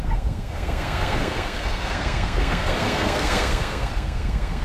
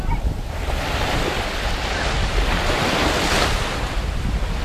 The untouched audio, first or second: second